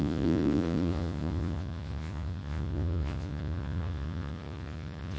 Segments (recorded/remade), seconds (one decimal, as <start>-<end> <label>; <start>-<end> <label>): 0.0-5.2 remade